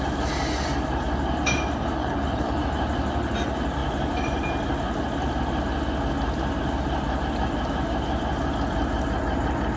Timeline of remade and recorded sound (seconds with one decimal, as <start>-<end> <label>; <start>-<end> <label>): 0.0-2.0 recorded; 2.0-2.6 remade; 2.6-9.8 recorded